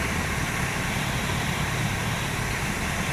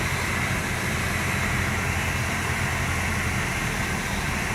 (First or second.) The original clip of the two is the second